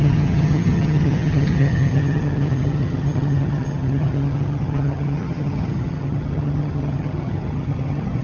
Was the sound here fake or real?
fake